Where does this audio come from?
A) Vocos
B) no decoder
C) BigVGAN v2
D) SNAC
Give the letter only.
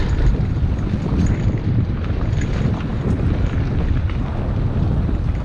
B